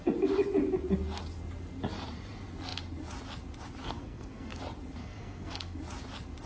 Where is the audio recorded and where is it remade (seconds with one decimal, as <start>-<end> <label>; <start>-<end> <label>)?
0.0-3.8 recorded; 3.8-4.6 remade; 4.6-5.0 recorded; 5.0-5.8 remade; 5.8-6.5 recorded